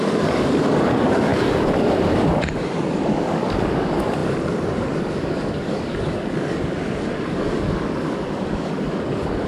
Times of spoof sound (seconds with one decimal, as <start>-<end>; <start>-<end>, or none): 0.0-9.5